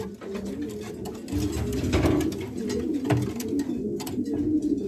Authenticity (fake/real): real